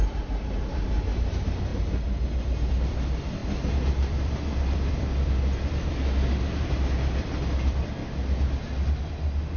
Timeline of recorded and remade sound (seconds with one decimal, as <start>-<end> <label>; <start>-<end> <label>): 0.0-1.7 remade; 1.7-2.7 recorded; 2.7-8.0 remade; 8.0-9.6 recorded

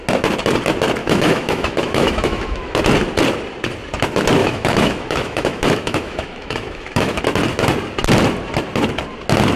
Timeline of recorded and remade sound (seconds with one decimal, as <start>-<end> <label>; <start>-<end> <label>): 0.0-1.0 recorded; 1.0-2.8 remade; 2.8-4.4 recorded; 4.4-7.2 remade; 7.2-9.6 recorded

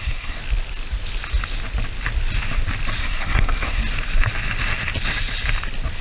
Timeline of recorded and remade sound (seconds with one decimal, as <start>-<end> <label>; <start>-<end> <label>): 0.0-0.4 remade; 0.4-3.0 recorded; 3.0-3.8 remade; 3.8-6.0 recorded

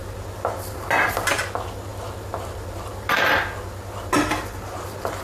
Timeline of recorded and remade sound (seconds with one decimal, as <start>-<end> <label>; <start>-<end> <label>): 0.0-5.2 recorded